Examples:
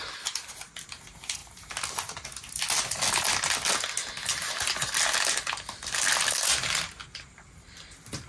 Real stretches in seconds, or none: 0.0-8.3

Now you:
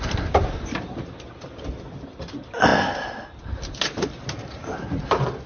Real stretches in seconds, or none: 0.0-5.5

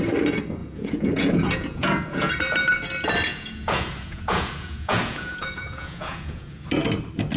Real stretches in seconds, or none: 0.0-0.6; 2.3-3.3; 6.6-7.4

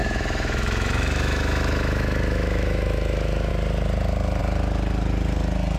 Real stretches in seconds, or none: 3.5-5.8

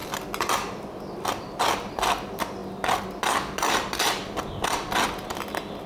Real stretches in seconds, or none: 0.0-5.9

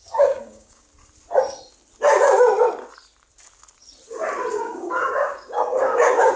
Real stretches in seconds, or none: 0.9-4.5